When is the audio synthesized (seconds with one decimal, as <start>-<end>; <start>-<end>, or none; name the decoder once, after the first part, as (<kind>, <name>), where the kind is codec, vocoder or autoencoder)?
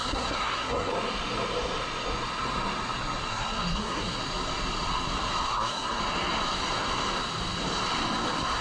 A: 0.0-0.9 (codec, SNAC); 3.3-4.2; 5.5-6.0